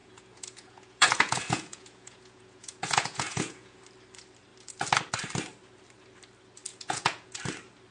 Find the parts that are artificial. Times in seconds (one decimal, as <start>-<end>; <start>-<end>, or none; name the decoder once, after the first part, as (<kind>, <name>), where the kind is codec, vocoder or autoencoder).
0.0-3.8 (vocoder, Vocos); 6.7-7.4